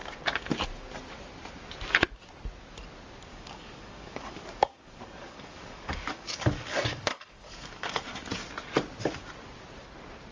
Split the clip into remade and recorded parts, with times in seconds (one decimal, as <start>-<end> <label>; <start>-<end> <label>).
0.0-3.3 recorded; 3.3-8.0 remade; 8.0-10.3 recorded